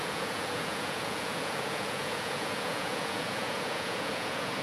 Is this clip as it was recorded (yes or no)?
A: no